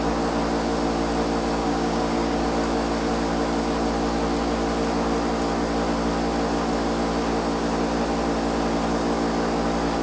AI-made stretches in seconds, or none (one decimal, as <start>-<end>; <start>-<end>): 1.6-2.4

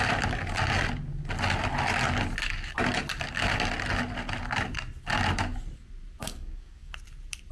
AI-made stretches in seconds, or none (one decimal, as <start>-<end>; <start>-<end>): 6.2-6.9

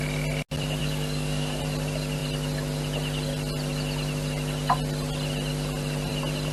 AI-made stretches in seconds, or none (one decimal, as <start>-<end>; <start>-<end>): 0.8-1.6

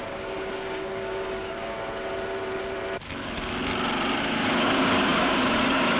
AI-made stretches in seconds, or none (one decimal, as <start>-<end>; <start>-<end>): 0.0-1.8; 4.2-6.0